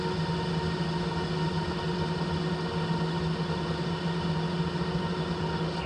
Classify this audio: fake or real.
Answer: real